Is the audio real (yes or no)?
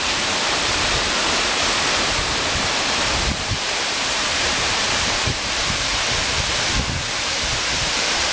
no